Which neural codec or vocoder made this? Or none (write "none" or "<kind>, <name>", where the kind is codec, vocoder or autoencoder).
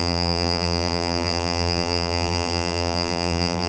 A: vocoder, BigVGAN v2